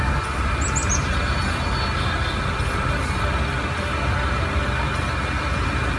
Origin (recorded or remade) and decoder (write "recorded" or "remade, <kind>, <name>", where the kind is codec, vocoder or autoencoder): recorded